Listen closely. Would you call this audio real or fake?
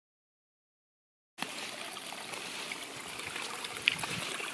real